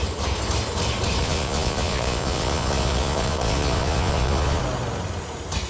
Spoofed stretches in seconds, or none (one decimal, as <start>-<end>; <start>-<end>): 1.2-4.6

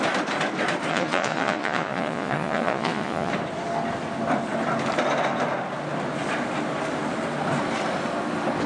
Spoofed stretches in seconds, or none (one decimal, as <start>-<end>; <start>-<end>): 0.9-3.3

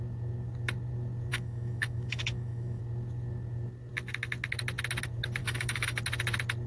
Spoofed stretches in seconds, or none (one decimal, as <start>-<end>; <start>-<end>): 1.3-2.8; 5.4-6.0